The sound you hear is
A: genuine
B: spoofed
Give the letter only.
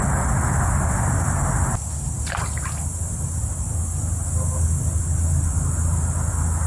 A